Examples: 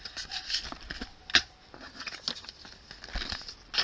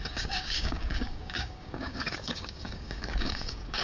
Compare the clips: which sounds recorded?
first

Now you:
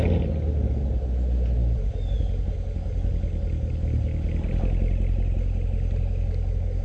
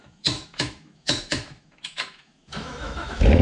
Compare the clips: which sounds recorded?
first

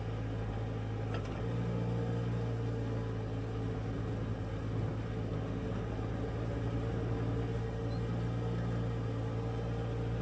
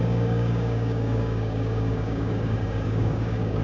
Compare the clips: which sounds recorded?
first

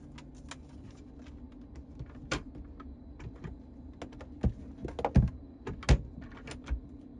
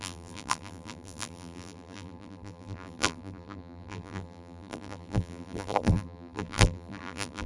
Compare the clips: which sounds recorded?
first